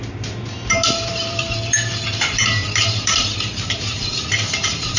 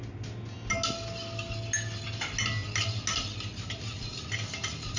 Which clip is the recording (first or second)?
second